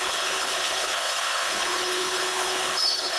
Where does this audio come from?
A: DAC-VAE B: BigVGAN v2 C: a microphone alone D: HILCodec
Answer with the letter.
D